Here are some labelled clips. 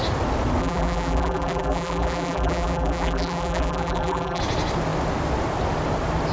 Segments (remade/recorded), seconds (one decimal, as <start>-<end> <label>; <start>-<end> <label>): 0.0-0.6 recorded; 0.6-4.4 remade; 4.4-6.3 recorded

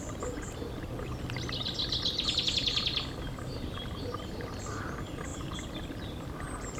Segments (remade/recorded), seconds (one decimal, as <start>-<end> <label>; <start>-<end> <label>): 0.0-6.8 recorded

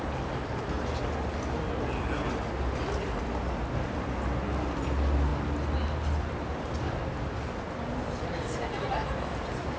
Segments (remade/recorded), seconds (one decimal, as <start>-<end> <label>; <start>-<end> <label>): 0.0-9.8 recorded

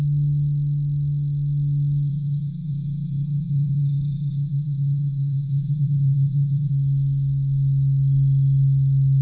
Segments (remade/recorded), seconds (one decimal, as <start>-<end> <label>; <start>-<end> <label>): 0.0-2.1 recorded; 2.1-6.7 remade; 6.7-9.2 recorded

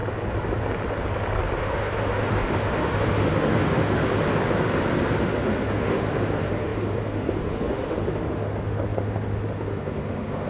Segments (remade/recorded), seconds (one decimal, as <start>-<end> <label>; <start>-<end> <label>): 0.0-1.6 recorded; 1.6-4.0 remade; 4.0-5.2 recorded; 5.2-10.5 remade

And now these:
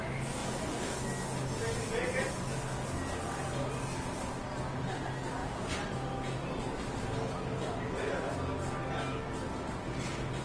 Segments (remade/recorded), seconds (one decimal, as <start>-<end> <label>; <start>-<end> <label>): 0.0-5.4 recorded; 5.4-5.9 remade; 5.9-10.4 recorded

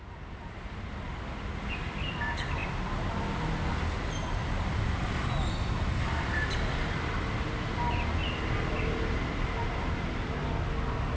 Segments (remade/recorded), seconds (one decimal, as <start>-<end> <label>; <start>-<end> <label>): 0.0-11.2 recorded

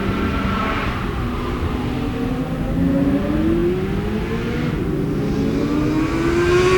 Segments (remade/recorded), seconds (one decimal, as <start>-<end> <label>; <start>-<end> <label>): 0.0-6.8 recorded